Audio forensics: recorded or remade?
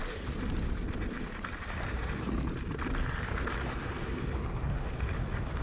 recorded